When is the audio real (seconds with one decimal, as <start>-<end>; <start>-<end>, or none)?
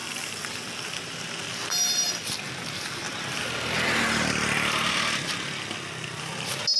0.0-6.8